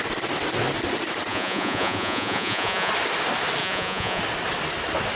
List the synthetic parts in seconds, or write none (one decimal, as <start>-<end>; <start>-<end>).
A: 1.3-2.9; 3.6-4.2